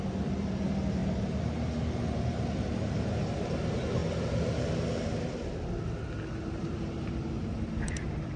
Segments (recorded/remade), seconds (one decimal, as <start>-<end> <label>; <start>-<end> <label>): 0.0-4.0 remade; 4.0-6.3 recorded; 6.3-8.4 remade